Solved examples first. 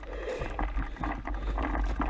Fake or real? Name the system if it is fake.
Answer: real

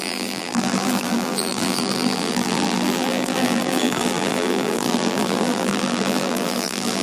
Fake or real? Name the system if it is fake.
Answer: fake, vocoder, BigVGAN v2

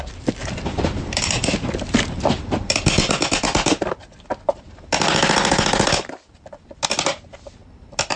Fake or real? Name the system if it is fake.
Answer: real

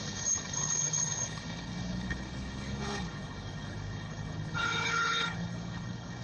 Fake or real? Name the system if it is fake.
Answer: fake, codec, HILCodec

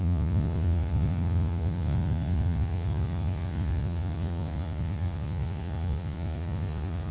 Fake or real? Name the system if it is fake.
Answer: fake, vocoder, Vocos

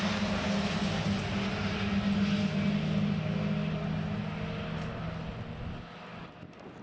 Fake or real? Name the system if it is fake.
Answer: real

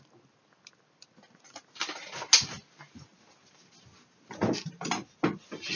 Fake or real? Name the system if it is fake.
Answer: real